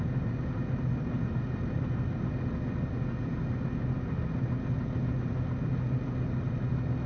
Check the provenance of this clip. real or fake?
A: real